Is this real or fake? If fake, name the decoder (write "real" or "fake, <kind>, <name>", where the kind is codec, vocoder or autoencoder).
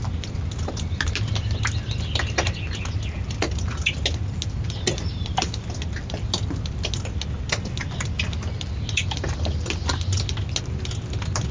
real